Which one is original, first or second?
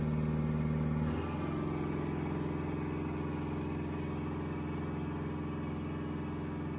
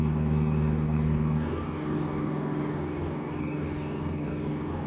first